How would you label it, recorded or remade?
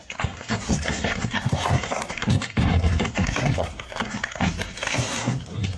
remade